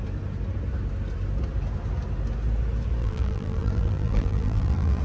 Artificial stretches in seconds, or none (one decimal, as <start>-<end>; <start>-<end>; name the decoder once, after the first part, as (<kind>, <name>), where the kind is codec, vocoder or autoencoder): 3.0-5.0 (vocoder, BigVGAN v2)